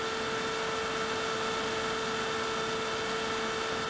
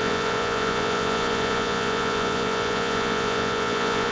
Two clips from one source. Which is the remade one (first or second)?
second